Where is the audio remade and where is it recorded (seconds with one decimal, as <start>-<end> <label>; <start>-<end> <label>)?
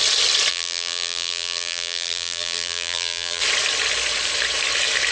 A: 0.0-0.5 recorded; 0.5-3.4 remade; 3.4-5.1 recorded